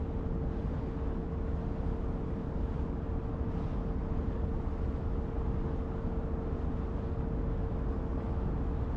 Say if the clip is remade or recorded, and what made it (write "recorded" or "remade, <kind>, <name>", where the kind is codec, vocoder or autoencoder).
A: recorded